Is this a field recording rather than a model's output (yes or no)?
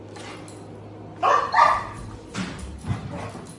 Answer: yes